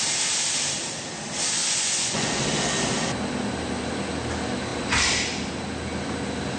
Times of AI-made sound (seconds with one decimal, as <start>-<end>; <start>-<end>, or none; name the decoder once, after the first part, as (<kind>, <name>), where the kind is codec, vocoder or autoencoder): 1.6-2.4 (vocoder, Vocos)